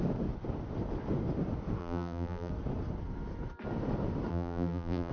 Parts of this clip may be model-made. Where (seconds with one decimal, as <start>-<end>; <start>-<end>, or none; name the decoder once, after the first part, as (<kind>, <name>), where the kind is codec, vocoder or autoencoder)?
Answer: 1.8-2.5 (vocoder, BigVGAN v2); 4.3-5.1